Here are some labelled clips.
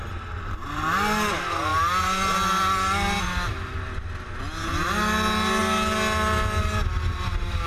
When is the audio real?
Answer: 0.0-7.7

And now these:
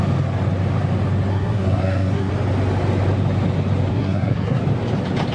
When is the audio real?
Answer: 0.0-1.3; 2.3-3.9; 4.6-5.3